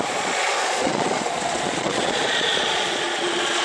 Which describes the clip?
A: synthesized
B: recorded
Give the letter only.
A